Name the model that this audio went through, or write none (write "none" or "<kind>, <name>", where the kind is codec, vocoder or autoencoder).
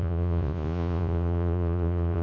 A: vocoder, Vocos